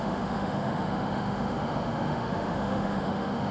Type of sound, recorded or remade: remade